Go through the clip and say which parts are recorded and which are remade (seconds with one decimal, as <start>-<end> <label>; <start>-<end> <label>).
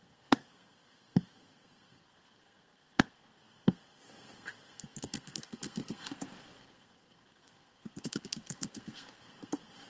0.0-9.9 remade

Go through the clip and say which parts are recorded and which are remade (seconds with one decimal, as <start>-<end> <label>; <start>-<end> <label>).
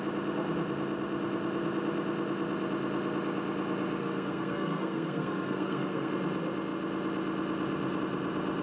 0.0-4.0 recorded; 4.0-6.1 remade; 6.1-8.6 recorded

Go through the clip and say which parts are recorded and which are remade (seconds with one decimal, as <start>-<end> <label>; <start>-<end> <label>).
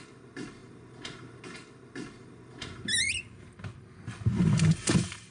0.0-5.3 recorded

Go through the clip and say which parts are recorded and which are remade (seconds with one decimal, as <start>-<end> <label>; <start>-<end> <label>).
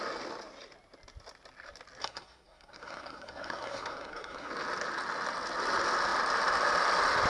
0.0-2.0 recorded; 2.0-4.5 remade; 4.5-7.3 recorded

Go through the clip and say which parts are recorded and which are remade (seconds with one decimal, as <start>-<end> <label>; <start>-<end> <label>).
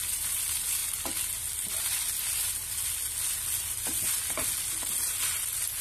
0.0-5.8 recorded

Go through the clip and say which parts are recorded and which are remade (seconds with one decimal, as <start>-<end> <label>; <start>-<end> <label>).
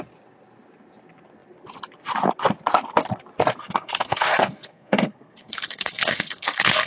0.0-3.6 recorded; 3.6-6.9 remade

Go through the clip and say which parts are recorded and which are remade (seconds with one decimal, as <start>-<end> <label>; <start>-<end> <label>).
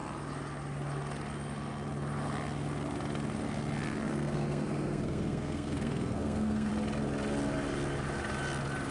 0.0-4.1 recorded; 4.1-6.7 remade; 6.7-8.9 recorded